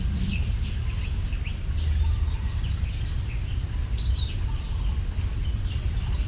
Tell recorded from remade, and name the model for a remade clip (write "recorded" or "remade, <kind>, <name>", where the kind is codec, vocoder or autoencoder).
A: recorded